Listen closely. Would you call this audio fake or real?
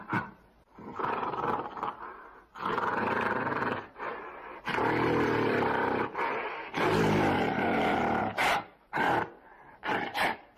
fake